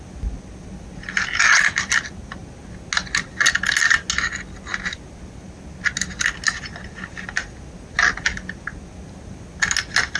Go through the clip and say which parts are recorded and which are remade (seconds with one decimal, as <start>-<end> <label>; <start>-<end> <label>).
0.0-10.2 recorded